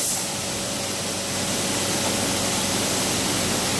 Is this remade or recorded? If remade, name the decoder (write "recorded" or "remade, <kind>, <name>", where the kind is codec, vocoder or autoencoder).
recorded